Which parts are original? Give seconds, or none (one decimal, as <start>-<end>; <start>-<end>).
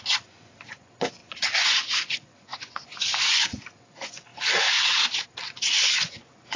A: 4.3-5.7